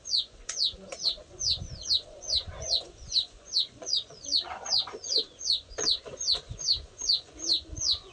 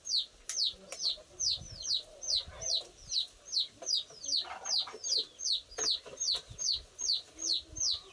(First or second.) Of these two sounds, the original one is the second